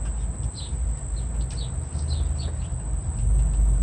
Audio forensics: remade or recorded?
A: recorded